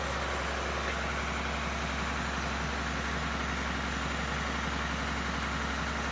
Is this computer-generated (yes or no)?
no